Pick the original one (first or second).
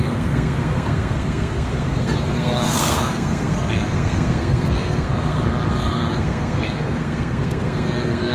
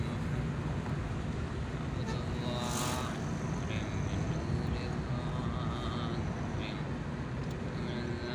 second